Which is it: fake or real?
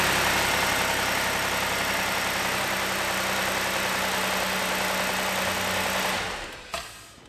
real